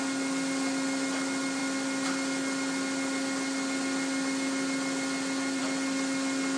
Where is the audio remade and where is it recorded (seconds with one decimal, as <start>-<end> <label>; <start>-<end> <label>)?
0.0-6.6 recorded